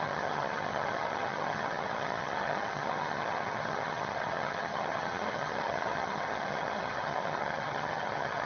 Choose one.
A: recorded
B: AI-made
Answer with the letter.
B